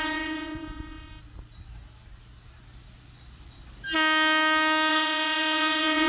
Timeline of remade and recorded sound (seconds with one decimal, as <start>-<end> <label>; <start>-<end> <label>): 0.0-1.2 remade; 1.2-4.9 recorded; 4.9-6.1 remade

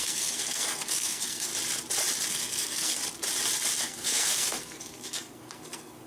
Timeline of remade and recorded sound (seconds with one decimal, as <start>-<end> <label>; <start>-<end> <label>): 0.0-1.5 remade; 1.5-2.3 recorded; 2.3-3.0 remade; 3.0-3.8 recorded; 3.8-6.1 remade

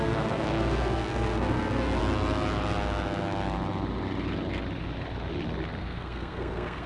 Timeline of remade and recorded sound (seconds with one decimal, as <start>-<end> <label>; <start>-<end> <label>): 0.0-2.0 remade; 2.0-5.8 recorded; 5.8-6.9 remade

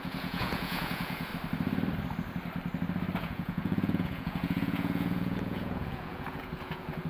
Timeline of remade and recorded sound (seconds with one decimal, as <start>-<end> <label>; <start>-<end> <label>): 0.0-1.3 remade; 1.3-3.2 recorded; 3.2-7.1 remade

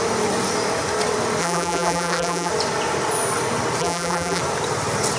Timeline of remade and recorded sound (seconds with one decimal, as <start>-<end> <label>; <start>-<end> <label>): 0.0-1.4 recorded; 1.4-2.5 remade; 2.5-3.8 recorded; 3.8-4.4 remade; 4.4-5.2 recorded

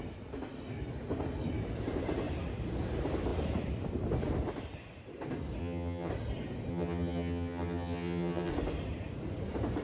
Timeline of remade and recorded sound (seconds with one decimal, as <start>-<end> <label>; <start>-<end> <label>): 0.0-5.6 recorded; 5.6-6.1 remade; 6.1-6.7 recorded; 6.7-8.5 remade; 8.5-9.8 recorded